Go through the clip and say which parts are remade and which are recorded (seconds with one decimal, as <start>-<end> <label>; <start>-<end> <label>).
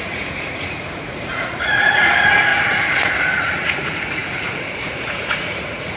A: 0.0-6.0 remade